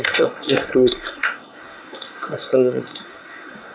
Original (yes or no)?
no